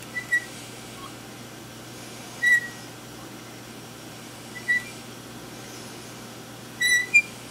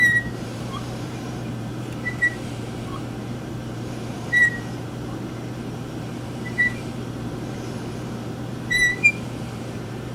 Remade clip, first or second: second